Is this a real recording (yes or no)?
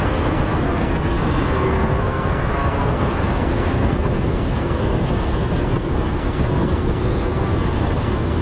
no